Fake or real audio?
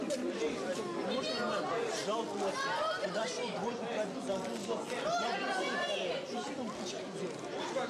real